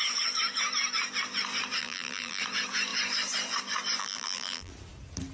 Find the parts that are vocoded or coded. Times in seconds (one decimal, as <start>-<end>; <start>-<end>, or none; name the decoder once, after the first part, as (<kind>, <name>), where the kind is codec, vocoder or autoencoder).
1.8-2.4 (vocoder, BigVGAN v2); 4.0-4.7